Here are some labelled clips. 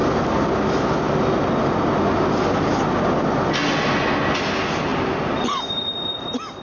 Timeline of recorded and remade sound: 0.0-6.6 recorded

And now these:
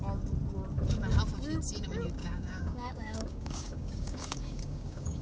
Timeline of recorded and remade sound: 0.0-2.2 recorded; 2.2-5.2 remade

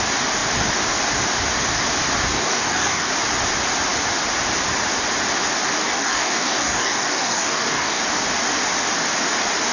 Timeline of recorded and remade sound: 0.0-2.3 recorded; 2.3-3.1 remade; 3.1-5.8 recorded; 5.8-8.0 remade; 8.0-9.7 recorded

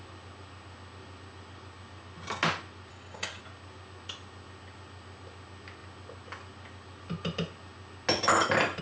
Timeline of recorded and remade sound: 0.0-2.9 recorded; 2.9-3.4 remade; 3.4-8.8 recorded

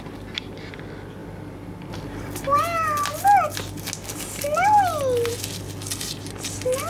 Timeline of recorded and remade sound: 0.0-6.9 recorded